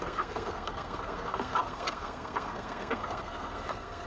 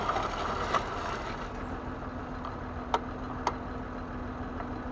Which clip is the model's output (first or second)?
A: first